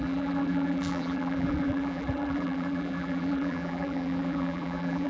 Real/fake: fake